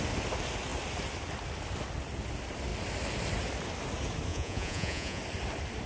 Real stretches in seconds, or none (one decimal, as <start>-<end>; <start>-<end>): 0.0-4.3; 5.2-5.9